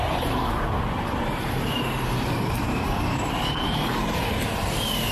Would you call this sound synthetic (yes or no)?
yes